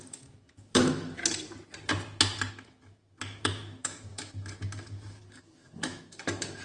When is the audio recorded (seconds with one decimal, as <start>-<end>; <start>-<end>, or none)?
1.2-2.5

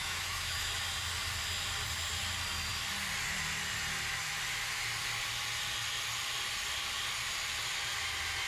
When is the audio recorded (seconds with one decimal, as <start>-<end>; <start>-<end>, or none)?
0.7-8.5

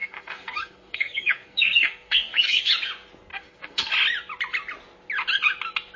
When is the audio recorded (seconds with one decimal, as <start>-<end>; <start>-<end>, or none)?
2.7-3.3; 3.9-6.0